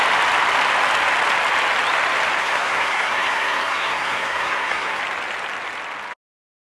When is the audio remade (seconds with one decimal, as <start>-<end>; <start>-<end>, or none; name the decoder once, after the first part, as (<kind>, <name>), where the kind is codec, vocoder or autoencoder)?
2.4-5.0 (codec, SNAC)